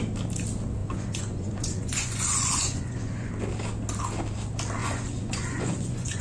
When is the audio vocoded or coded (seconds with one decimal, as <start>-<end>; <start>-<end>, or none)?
0.8-3.3; 4.8-6.2